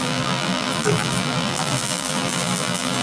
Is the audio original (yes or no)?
no